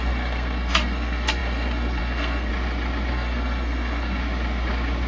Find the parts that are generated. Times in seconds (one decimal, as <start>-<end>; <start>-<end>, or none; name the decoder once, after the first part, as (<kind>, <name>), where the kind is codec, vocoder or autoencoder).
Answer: 0.0-2.5 (codec, SNAC); 3.1-4.2